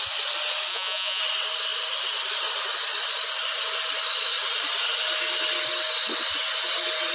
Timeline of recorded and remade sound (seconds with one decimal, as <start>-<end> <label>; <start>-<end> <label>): 0.0-0.7 recorded; 0.7-1.2 remade; 1.2-7.1 recorded